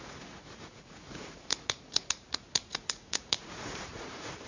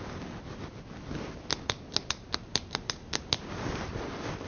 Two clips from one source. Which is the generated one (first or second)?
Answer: first